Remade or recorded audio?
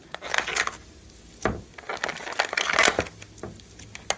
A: recorded